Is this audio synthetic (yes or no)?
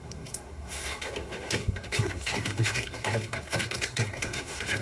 yes